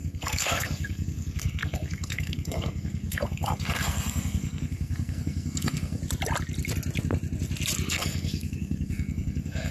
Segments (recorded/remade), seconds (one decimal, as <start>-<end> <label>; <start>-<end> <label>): 0.0-6.0 remade; 6.0-7.9 recorded; 7.9-9.7 remade